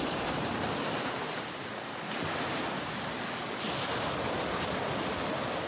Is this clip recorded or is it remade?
recorded